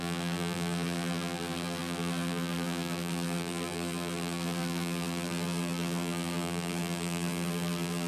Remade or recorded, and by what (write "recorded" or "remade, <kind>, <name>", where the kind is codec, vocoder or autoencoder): remade, vocoder, BigVGAN v2